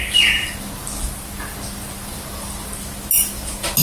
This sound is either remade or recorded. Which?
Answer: recorded